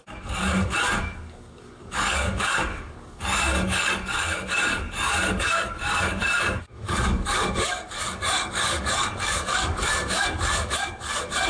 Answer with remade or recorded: remade